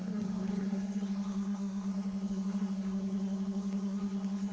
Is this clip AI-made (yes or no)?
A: yes